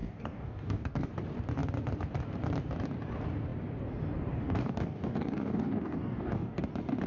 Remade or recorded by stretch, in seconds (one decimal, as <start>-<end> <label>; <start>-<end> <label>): 0.0-1.1 remade; 1.1-4.4 recorded; 4.4-6.6 remade; 6.6-7.1 recorded